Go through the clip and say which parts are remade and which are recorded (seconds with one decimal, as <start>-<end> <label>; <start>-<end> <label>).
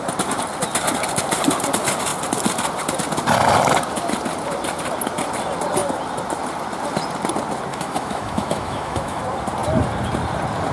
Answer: 0.0-7.7 recorded; 7.7-9.2 remade; 9.2-10.7 recorded